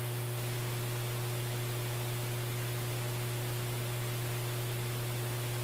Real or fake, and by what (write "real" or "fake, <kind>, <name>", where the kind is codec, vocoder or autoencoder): real